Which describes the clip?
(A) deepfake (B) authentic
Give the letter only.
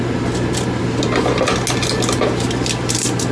B